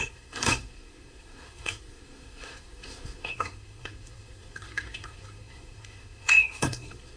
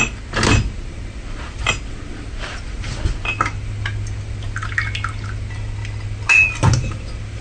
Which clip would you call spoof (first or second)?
first